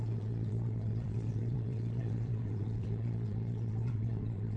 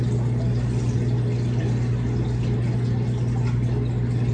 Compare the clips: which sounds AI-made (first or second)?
first